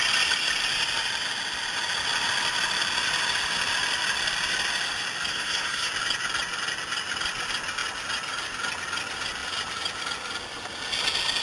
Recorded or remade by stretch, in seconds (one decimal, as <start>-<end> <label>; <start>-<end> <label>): 0.0-5.3 recorded; 5.3-5.9 remade; 5.9-11.4 recorded